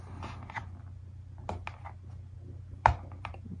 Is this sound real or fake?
real